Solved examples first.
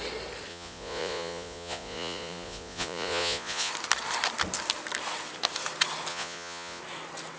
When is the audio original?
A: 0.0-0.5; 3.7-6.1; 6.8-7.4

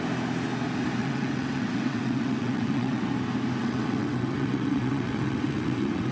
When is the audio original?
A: 0.0-1.0; 3.1-3.6

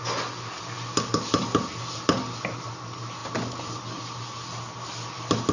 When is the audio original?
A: 0.0-3.2; 4.0-5.5